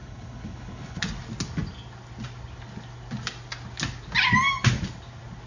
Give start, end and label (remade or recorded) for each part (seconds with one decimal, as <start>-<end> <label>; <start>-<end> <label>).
0.0-1.0 remade; 1.0-5.5 recorded